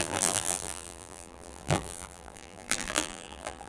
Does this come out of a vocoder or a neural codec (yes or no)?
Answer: yes